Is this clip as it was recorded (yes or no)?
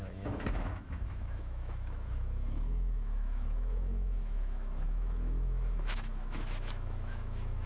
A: no